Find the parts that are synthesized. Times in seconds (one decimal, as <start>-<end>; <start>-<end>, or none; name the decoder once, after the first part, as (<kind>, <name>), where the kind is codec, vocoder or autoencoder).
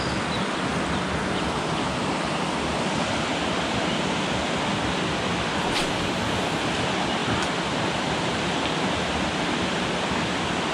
none